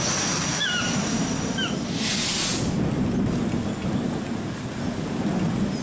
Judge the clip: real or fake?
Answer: real